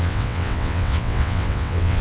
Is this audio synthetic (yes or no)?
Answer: yes